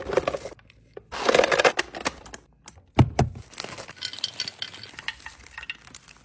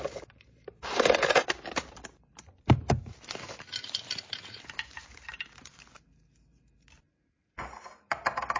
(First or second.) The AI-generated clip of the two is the second